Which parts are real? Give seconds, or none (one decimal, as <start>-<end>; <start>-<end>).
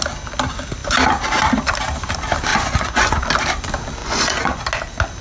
0.0-2.5; 3.2-4.0; 4.6-5.2